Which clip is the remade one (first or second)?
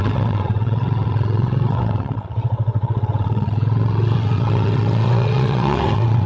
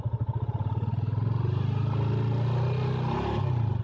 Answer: first